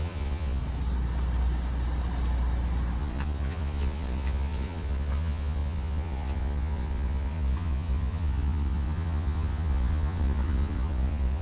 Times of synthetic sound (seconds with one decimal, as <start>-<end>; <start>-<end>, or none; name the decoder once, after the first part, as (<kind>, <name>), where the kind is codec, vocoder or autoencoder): 0.0-0.6 (vocoder, Vocos); 3.0-11.4